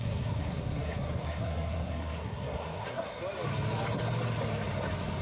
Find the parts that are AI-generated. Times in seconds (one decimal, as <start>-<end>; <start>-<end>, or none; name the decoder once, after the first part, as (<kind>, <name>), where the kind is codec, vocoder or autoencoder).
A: 0.0-3.2 (codec, SNAC)